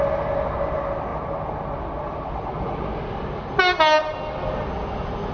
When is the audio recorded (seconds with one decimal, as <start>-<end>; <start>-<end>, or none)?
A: 0.0-5.3